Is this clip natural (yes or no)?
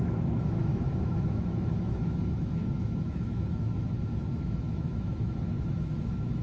no